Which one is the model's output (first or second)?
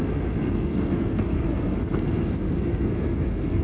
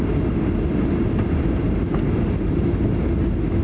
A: first